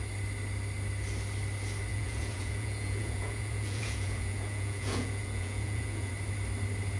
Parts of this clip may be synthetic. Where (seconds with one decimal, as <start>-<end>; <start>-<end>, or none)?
1.9-6.1